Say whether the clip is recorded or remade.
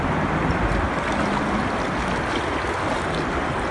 recorded